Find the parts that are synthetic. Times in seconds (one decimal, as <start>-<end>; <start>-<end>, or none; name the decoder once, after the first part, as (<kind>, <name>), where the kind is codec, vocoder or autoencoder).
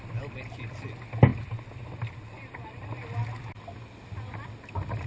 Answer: none